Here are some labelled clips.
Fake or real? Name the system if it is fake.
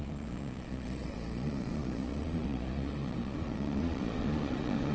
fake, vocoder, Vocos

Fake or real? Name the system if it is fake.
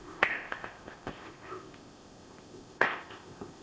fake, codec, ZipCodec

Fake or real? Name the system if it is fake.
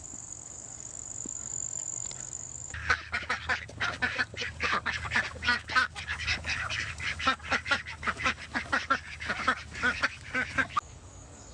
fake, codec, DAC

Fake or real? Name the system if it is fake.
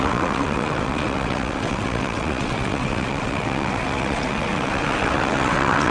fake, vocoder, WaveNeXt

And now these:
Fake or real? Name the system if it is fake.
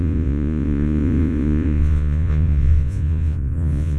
fake, vocoder, Vocos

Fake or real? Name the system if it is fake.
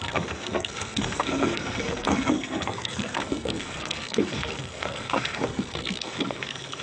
fake, codec, SNAC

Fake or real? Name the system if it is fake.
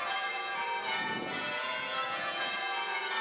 fake, vocoder, Vocos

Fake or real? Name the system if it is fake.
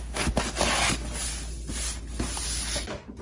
real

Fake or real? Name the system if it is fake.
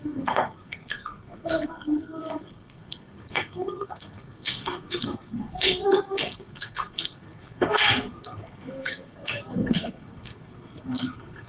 fake, codec, SNAC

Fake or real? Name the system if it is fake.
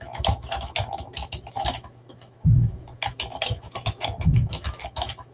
fake, autoencoder, DAC-VAE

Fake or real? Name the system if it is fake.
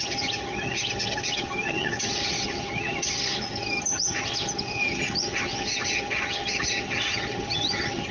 fake, vocoder, HiFi-GAN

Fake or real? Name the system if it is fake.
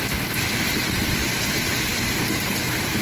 real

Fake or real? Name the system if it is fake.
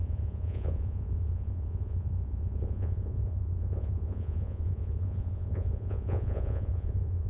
fake, vocoder, Vocos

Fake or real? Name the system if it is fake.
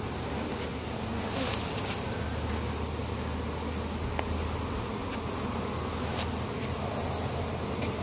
real